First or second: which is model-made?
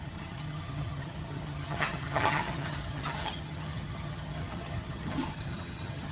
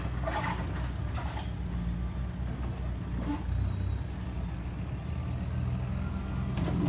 first